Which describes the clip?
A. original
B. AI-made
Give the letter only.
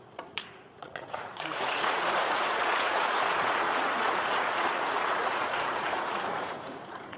B